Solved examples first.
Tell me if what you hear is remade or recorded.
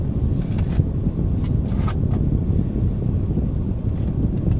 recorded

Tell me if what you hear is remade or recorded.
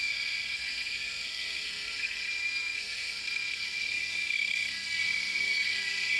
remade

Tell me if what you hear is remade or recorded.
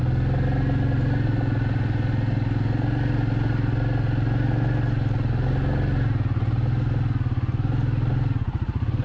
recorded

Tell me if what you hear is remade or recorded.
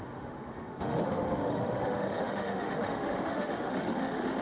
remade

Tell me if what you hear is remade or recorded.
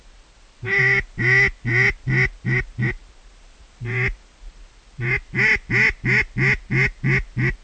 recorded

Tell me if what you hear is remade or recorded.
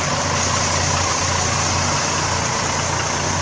recorded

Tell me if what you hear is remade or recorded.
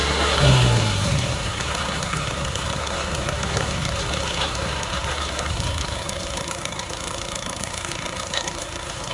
remade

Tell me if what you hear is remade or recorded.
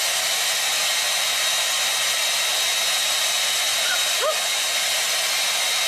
recorded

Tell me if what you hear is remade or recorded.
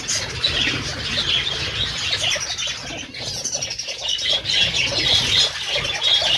recorded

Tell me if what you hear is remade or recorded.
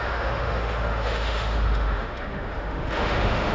remade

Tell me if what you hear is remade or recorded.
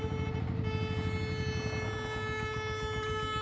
recorded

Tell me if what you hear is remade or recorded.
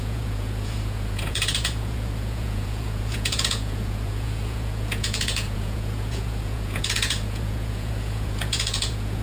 remade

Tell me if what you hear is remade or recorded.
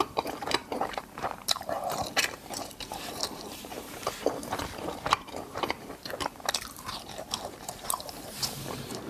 remade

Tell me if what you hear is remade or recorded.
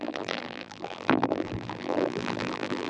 remade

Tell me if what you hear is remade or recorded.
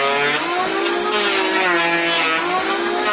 recorded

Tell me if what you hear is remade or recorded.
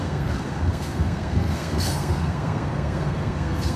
remade